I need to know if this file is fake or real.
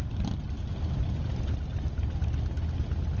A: real